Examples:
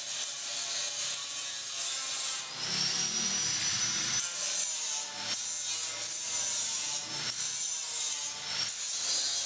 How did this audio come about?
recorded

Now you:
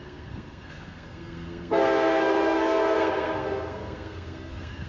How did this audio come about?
remade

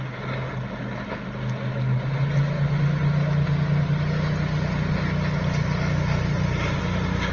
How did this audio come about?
recorded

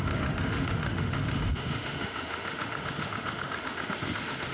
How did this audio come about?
remade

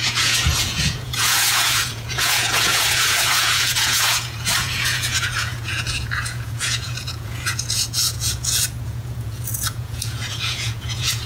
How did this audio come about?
remade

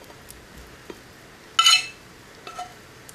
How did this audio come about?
recorded